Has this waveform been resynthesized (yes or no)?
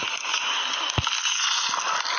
no